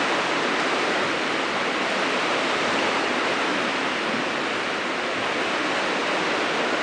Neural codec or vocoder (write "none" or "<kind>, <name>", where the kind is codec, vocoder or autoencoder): none